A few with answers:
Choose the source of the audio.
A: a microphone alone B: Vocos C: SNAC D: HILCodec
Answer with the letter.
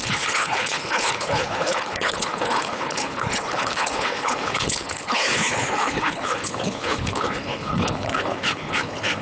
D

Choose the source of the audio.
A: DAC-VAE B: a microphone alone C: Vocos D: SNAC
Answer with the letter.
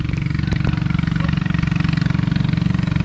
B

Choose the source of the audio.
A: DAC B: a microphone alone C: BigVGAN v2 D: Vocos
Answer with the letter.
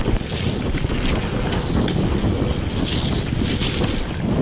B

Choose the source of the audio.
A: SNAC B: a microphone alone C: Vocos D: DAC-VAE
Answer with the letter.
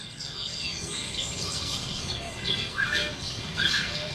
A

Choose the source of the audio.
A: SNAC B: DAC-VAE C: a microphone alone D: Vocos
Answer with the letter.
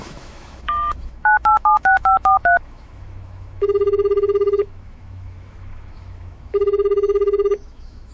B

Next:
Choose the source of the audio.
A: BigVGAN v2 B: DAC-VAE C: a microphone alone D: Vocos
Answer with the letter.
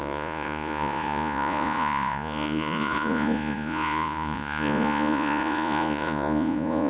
D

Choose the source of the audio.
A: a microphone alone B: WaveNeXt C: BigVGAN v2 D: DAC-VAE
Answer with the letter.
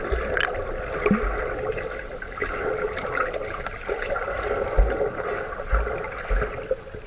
A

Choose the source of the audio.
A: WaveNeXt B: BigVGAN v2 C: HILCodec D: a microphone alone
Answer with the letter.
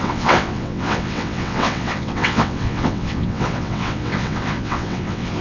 A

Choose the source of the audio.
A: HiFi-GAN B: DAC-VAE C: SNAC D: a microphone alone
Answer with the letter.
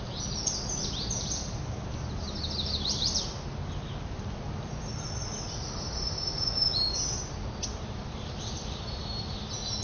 D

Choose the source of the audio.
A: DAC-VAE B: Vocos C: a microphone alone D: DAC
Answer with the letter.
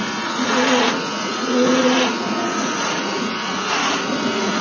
B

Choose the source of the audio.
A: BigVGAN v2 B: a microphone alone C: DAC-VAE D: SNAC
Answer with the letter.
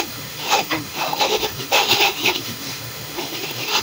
C